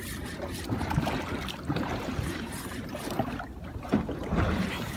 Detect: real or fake fake